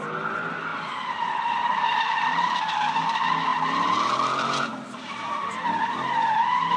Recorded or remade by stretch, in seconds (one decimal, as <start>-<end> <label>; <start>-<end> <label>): 0.0-0.7 recorded; 0.7-2.8 remade; 2.8-3.5 recorded; 3.5-4.1 remade; 4.1-4.7 recorded; 4.7-5.5 remade; 5.5-6.8 recorded